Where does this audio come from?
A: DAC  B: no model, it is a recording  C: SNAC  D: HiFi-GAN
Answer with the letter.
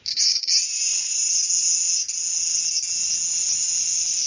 B